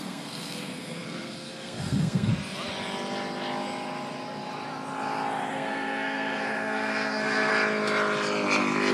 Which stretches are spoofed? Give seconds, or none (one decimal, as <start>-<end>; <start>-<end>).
0.0-2.3; 5.5-7.5